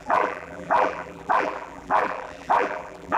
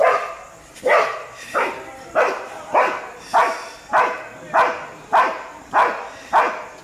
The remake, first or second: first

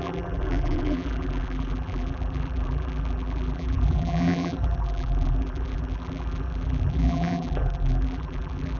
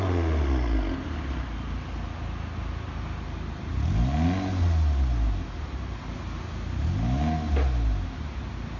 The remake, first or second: first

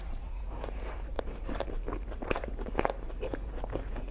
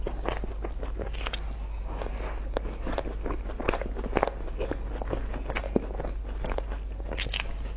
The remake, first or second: first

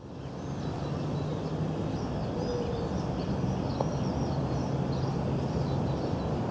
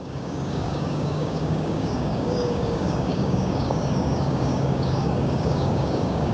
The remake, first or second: second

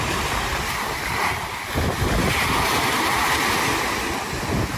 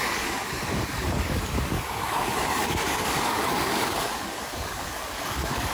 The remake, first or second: second